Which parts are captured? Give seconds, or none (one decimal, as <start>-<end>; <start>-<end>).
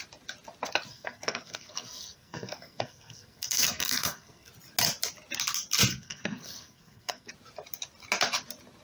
0.0-0.9; 4.5-5.9; 7.3-8.8